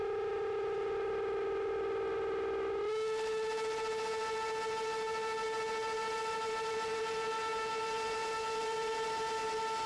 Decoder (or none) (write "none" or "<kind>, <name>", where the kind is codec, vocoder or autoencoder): none